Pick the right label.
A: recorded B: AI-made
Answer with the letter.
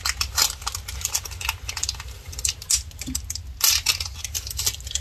A